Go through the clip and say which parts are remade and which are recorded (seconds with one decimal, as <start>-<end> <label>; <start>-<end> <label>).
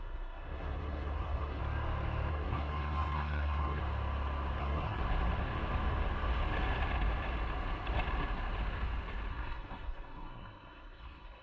0.0-1.6 remade; 1.6-2.3 recorded; 2.3-3.8 remade; 3.8-4.6 recorded; 4.6-5.0 remade; 5.0-9.3 recorded; 9.3-11.4 remade